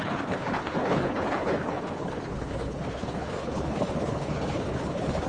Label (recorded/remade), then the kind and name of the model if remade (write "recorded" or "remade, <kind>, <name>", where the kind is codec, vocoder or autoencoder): remade, codec, HILCodec